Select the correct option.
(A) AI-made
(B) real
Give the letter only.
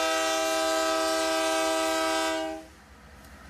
B